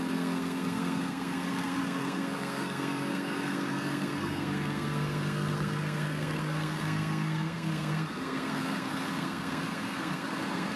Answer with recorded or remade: remade